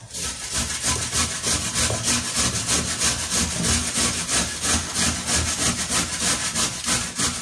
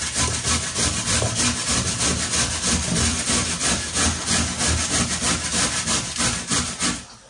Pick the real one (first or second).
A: first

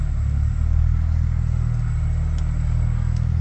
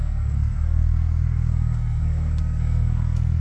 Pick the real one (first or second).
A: first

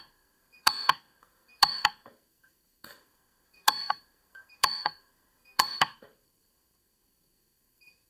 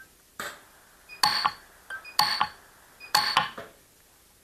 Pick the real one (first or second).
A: second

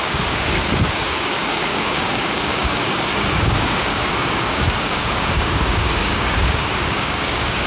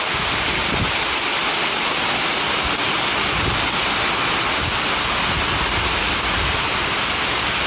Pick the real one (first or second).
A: second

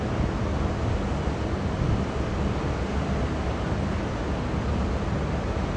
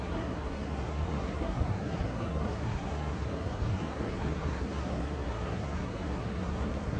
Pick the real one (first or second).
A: first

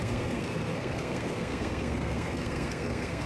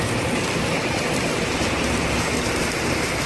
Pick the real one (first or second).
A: second